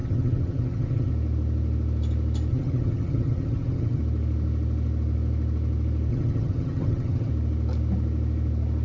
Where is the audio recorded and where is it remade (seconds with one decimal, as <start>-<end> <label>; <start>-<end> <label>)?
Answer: 0.0-1.1 remade; 1.1-2.5 recorded; 2.5-4.0 remade; 4.0-6.1 recorded; 6.1-7.3 remade; 7.3-8.8 recorded